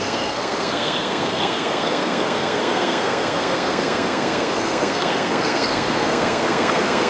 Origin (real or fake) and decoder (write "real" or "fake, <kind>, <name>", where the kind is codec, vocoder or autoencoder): fake, codec, SNAC